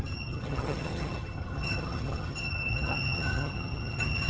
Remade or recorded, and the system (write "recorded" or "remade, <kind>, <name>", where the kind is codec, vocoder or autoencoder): remade, vocoder, HiFi-GAN